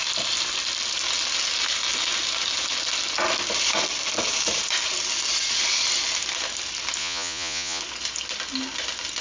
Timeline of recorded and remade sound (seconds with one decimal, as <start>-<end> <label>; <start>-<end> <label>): 0.0-7.0 recorded; 7.0-7.8 remade; 7.8-9.2 recorded